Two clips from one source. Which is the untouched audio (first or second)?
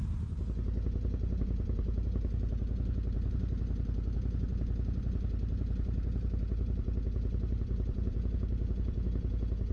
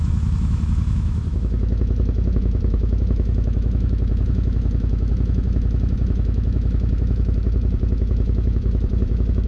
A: first